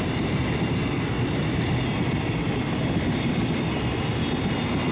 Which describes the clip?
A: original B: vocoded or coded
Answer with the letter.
A